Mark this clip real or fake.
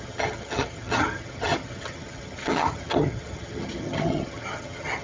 fake